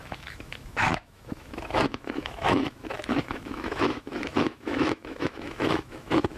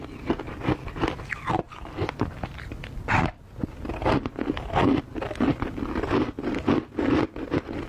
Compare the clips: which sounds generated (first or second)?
first